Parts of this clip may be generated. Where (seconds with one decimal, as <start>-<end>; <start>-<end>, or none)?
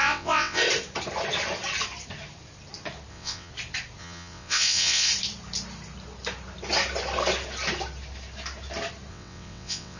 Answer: 0.0-0.6; 3.1-3.5; 4.0-5.1; 9.1-10.0